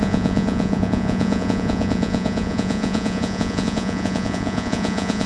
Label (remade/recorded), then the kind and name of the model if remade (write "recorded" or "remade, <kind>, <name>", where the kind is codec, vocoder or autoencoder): remade, vocoder, Vocos